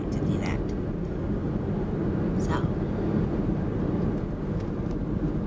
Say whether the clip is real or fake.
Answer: real